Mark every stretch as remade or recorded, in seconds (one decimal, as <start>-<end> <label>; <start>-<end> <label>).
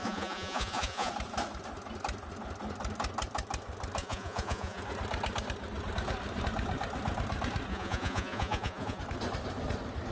0.0-1.1 remade; 1.1-4.0 recorded; 4.0-4.8 remade; 4.8-7.7 recorded; 7.7-9.0 remade; 9.0-10.1 recorded